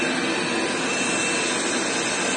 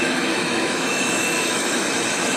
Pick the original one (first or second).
first